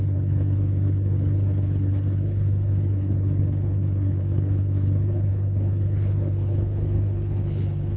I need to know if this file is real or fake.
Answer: fake